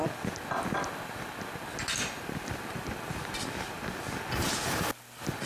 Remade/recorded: recorded